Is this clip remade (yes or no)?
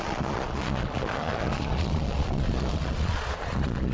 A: yes